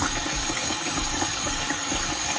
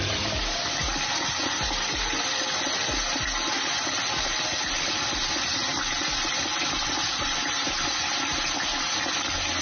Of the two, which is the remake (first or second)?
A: first